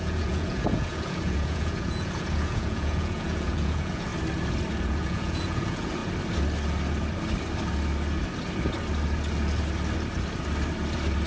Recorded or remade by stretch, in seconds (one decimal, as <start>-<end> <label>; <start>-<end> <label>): 0.0-4.1 remade; 4.1-4.7 recorded; 4.7-6.0 remade; 6.0-11.3 recorded